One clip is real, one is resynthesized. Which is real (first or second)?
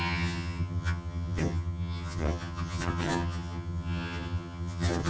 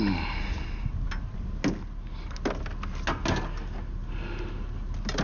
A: second